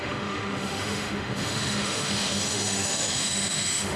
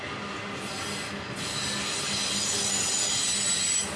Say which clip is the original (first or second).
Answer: second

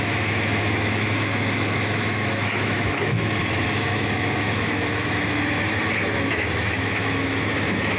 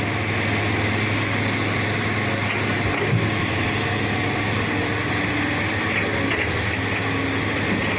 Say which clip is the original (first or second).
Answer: second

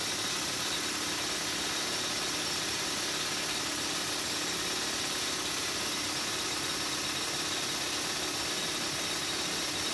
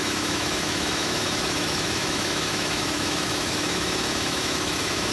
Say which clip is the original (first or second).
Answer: first